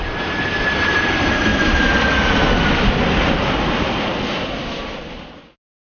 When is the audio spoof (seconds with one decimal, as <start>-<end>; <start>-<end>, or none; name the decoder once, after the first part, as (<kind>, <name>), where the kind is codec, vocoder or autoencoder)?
none